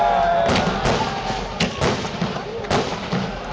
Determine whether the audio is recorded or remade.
recorded